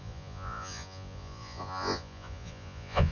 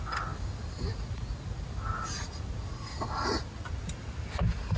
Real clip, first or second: second